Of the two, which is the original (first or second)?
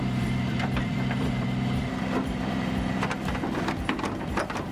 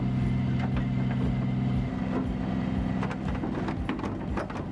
second